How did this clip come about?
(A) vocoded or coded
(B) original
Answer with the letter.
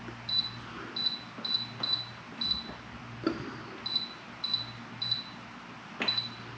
B